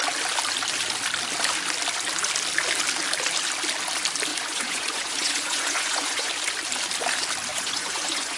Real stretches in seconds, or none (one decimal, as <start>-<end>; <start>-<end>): 0.0-4.3; 6.3-7.5